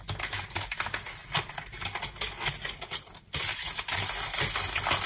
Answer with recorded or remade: recorded